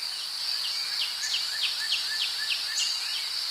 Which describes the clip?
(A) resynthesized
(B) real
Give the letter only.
B